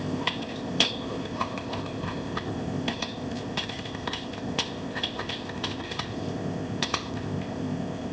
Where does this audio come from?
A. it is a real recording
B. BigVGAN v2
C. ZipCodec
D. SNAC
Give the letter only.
C